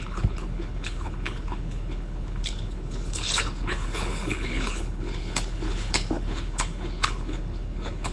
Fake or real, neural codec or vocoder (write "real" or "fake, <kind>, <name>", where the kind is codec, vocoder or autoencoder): fake, codec, HILCodec